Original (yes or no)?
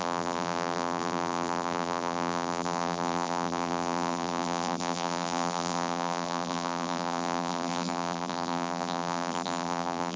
no